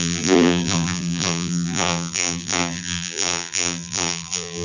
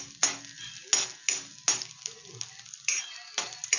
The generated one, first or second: first